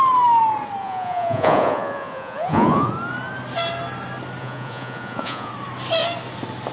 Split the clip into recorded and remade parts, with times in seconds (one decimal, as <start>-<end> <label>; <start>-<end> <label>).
0.0-0.8 recorded; 0.8-2.9 remade; 2.9-4.4 recorded; 4.4-5.5 remade; 5.5-6.7 recorded